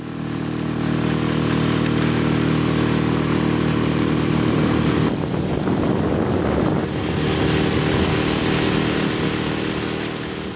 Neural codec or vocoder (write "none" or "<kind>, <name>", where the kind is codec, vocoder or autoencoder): none